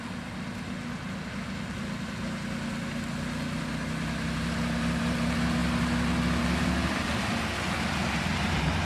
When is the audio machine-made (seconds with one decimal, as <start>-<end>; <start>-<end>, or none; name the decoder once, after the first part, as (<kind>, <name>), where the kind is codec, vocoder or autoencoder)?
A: none